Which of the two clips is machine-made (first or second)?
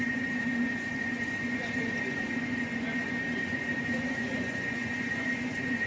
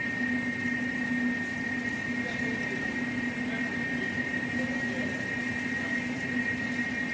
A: first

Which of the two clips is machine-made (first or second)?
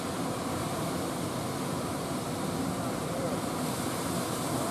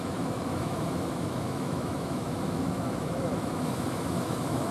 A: second